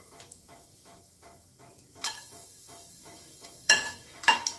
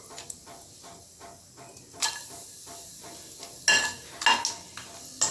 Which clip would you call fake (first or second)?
first